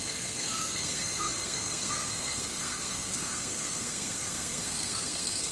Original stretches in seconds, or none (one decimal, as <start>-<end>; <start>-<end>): none